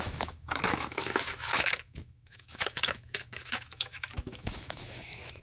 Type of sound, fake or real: fake